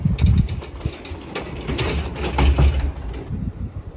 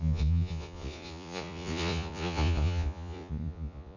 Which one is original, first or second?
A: first